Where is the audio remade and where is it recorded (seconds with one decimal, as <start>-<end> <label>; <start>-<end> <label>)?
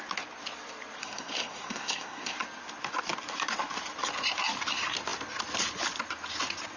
0.0-1.0 recorded; 1.0-2.3 remade; 2.3-6.8 recorded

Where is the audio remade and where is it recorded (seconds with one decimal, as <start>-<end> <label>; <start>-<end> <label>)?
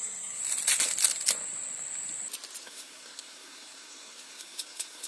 0.0-0.4 remade; 0.4-2.6 recorded; 2.6-5.1 remade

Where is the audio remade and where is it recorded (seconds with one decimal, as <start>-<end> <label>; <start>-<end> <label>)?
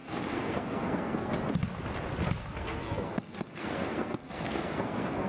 0.0-1.3 remade; 1.3-2.4 recorded; 2.4-5.3 remade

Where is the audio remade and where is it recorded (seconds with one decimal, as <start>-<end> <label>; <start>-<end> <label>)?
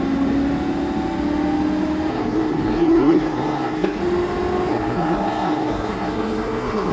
0.0-2.1 recorded; 2.1-4.0 remade; 4.0-4.7 recorded; 4.7-6.9 remade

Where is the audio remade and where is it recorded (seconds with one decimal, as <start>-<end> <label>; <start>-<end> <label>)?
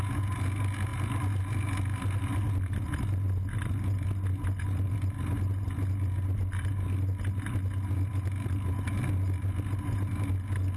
0.0-10.8 recorded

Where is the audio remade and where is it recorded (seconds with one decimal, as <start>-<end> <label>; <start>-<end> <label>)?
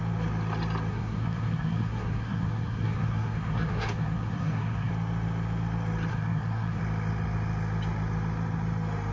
0.0-0.9 recorded; 0.9-4.9 remade; 4.9-6.1 recorded; 6.1-6.8 remade; 6.8-9.1 recorded